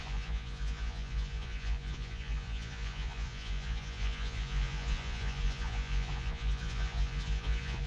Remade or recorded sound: remade